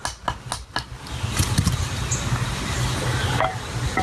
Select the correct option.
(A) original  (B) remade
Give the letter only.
A